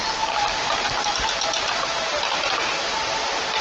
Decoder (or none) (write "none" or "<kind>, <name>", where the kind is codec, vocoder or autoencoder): none